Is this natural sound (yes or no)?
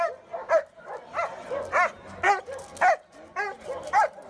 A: yes